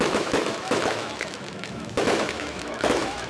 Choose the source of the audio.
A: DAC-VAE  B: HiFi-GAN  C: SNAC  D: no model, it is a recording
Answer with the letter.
A